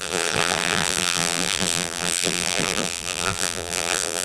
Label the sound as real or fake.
fake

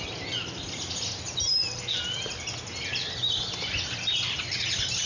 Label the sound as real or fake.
real